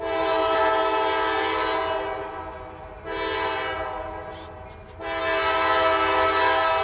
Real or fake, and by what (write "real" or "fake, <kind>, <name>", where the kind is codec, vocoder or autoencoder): real